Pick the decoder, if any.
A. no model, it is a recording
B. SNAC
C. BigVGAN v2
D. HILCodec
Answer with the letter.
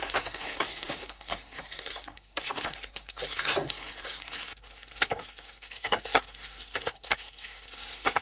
B